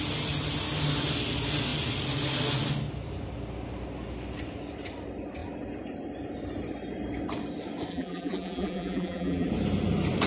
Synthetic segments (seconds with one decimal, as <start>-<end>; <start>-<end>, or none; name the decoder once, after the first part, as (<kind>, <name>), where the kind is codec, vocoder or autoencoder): 7.9-9.5 (vocoder, BigVGAN v2)